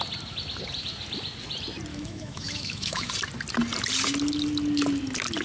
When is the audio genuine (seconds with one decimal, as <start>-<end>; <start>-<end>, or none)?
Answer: 0.0-1.9; 3.1-5.4